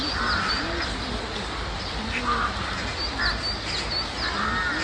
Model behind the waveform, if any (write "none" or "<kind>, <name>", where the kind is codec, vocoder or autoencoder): none